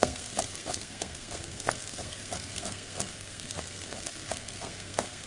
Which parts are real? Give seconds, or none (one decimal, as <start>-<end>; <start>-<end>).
none